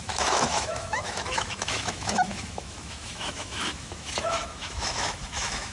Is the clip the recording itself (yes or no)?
no